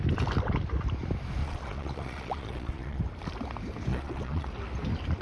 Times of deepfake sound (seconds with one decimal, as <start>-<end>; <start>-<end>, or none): 1.4-3.0; 3.9-4.5